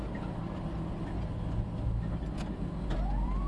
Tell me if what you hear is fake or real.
real